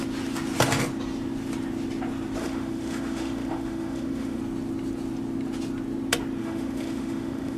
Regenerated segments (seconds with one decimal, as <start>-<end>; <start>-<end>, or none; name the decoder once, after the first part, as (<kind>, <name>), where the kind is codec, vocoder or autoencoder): 2.4-4.4 (autoencoder, DAC-VAE); 6.4-7.6